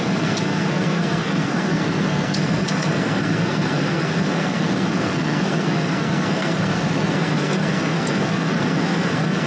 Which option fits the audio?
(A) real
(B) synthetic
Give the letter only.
B